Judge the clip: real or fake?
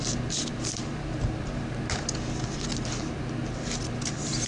real